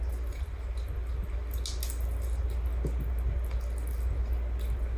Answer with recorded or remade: recorded